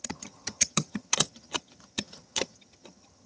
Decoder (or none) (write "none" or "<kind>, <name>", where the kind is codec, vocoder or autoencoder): vocoder, HiFi-GAN